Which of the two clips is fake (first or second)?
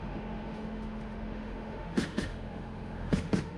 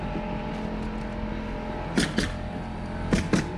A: first